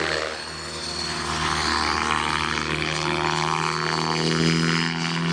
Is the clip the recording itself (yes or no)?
yes